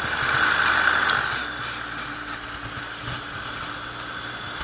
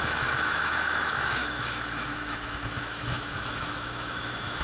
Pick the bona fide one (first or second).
first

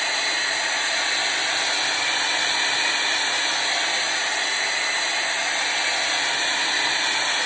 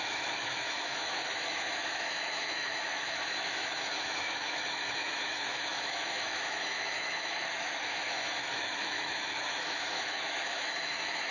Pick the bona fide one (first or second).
first